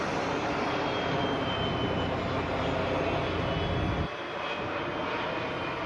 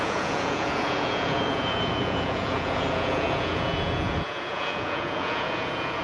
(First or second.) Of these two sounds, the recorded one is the first